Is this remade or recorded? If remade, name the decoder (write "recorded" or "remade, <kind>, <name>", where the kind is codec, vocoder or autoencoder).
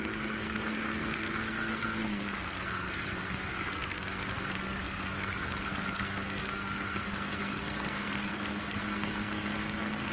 remade, codec, SNAC